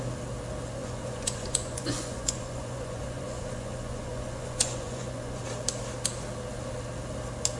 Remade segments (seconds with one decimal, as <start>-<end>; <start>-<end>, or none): 0.8-5.4